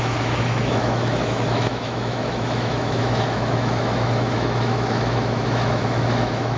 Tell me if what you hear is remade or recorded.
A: remade